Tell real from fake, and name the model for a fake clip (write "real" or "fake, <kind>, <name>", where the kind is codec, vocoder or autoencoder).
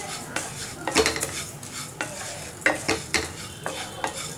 real